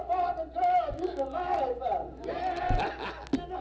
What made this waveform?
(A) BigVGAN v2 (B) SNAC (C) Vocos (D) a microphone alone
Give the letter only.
D